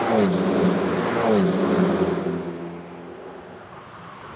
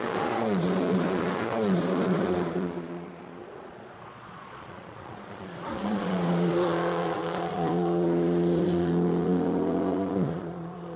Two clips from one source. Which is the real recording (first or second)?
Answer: first